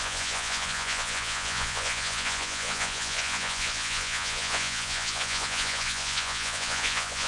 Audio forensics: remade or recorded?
remade